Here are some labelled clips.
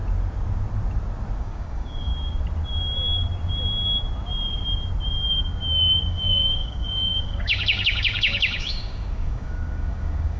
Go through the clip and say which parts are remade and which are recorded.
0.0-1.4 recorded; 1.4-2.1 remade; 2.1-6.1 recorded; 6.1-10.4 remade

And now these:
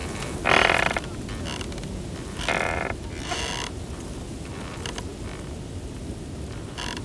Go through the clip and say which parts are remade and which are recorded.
0.0-5.1 recorded; 5.1-5.8 remade; 5.8-7.0 recorded